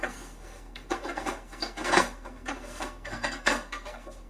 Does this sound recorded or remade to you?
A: remade